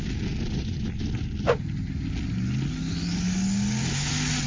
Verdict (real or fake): real